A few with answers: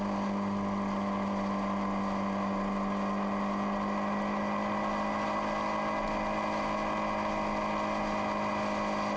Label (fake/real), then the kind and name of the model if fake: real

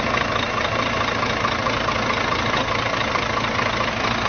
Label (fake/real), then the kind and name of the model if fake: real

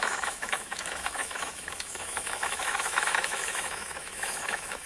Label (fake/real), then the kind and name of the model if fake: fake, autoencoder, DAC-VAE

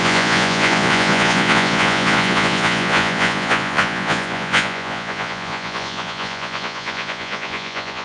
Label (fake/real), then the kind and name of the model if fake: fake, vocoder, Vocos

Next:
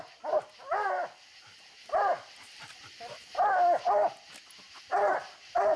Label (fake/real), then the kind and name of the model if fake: real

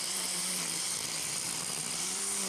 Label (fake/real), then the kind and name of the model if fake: fake, vocoder, BigVGAN v2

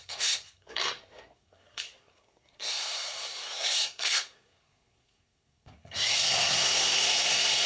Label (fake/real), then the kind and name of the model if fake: fake, codec, SNAC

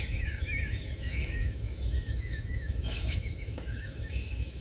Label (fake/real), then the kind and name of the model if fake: fake, autoencoder, DAC-VAE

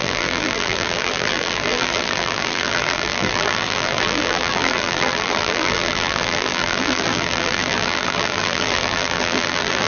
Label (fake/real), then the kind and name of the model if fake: fake, vocoder, BigVGAN v2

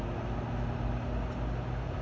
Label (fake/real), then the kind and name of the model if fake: real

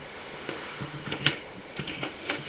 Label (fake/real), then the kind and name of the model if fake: fake, autoencoder, DAC-VAE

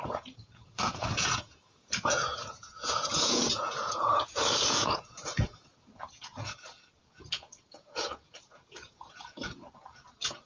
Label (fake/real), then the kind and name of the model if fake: fake, vocoder, Vocos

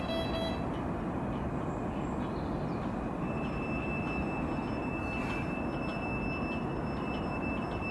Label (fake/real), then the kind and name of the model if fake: real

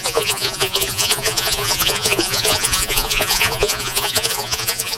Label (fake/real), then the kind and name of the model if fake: fake, vocoder, Vocos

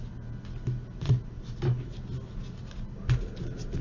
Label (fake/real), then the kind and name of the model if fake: real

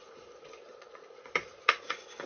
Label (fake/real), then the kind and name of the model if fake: fake, vocoder, Vocos